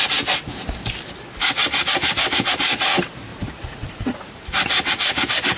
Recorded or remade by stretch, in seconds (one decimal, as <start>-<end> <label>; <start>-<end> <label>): 0.0-3.3 recorded; 3.3-4.3 remade; 4.3-5.6 recorded